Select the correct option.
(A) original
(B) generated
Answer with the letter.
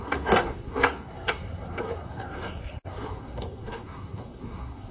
B